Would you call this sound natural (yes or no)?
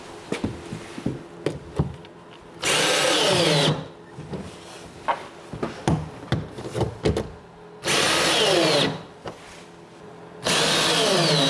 yes